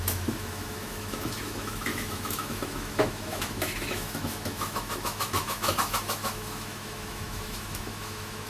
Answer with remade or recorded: remade